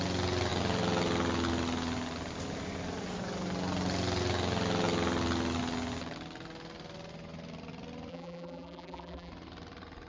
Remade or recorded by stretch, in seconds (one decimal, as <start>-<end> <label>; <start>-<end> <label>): 0.0-8.1 recorded; 8.1-9.3 remade; 9.3-10.1 recorded